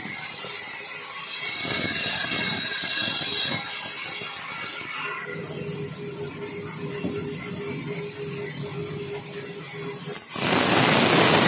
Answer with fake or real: real